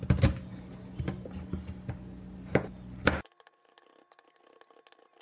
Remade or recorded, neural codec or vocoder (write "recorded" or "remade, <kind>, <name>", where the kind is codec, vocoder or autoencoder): recorded